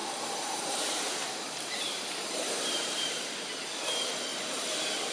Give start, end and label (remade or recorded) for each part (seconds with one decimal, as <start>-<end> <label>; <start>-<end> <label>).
0.0-3.1 remade; 3.1-4.3 recorded; 4.3-5.1 remade